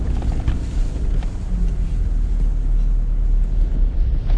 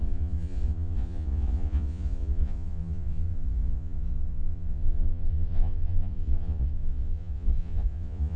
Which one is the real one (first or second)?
first